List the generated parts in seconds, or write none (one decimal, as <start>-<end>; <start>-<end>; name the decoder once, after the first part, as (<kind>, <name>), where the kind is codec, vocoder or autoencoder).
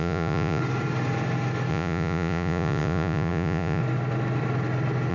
0.0-0.6 (vocoder, Vocos); 1.7-3.8